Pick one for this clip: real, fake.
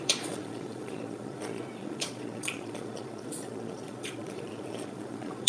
fake